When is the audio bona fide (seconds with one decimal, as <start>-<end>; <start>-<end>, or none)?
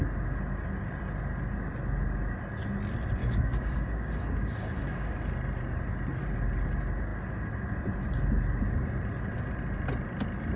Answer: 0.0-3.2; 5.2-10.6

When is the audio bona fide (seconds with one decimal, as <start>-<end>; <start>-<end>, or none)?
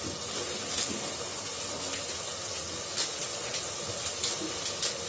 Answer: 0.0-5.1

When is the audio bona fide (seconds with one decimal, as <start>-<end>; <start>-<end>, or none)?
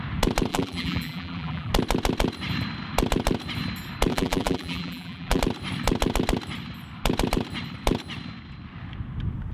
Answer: 0.0-0.5; 1.7-4.1; 5.4-9.5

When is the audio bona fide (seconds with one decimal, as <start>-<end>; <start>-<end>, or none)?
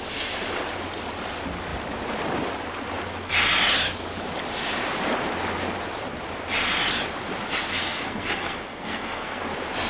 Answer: 0.0-7.8; 9.4-9.9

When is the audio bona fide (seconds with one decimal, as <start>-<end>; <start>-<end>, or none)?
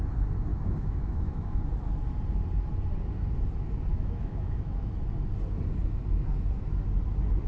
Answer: 0.0-0.5; 1.6-3.9; 4.9-7.5